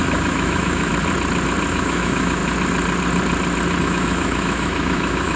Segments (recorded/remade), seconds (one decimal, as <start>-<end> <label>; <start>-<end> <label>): 0.0-0.9 remade; 0.9-1.7 recorded; 1.7-2.4 remade; 2.4-3.8 recorded; 3.8-5.4 remade